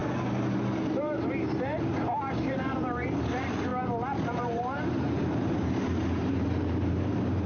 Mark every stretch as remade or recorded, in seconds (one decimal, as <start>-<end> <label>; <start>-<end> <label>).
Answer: 0.0-3.7 remade; 3.7-4.3 recorded; 4.3-7.5 remade